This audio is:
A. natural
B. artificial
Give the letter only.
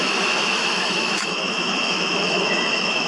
B